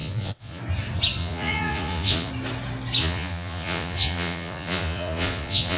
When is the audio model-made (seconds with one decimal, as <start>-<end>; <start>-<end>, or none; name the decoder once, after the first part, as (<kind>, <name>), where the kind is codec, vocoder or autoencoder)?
0.0-0.6 (vocoder, Vocos); 1.2-2.3; 3.0-5.8